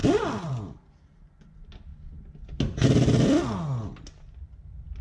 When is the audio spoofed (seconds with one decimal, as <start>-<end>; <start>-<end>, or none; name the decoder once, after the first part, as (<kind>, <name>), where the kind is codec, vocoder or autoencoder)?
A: none

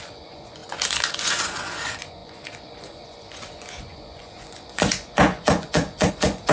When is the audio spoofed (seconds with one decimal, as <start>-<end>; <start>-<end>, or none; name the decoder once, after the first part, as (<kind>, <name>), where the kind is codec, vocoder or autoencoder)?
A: 0.0-6.5 (vocoder, Vocos)

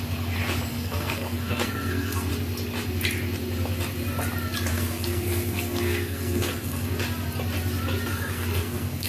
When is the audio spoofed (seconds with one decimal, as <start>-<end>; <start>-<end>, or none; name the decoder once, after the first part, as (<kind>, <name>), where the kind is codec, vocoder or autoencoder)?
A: 0.7-2.3 (codec, SNAC); 4.7-6.9; 8.1-9.1

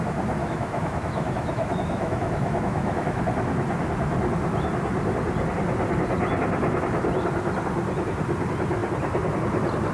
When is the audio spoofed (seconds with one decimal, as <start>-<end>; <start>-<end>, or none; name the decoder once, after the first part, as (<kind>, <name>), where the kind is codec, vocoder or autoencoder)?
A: 0.4-3.2 (autoencoder, DAC-VAE)

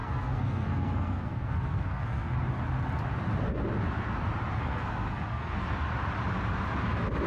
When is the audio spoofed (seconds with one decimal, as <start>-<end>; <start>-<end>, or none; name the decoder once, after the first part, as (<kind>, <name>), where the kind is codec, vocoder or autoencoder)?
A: 0.0-2.4 (codec, SNAC); 4.6-5.6